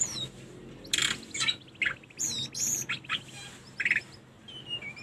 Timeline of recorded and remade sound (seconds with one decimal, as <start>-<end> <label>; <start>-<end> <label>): 0.0-5.0 recorded